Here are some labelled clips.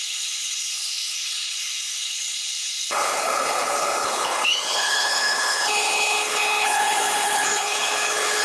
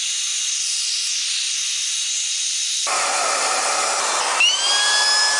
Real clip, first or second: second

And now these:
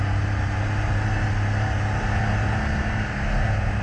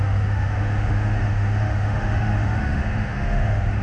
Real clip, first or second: first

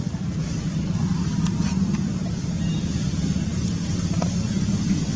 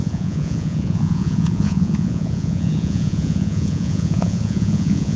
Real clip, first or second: first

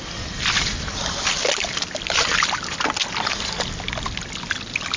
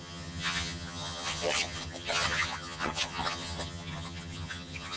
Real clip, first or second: first